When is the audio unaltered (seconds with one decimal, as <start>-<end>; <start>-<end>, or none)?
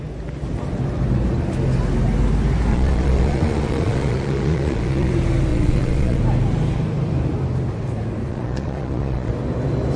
0.0-2.7; 5.1-5.5; 6.2-8.3; 9.3-10.0